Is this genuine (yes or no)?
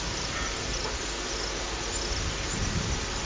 yes